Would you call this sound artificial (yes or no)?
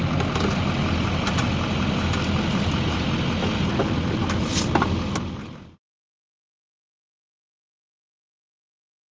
no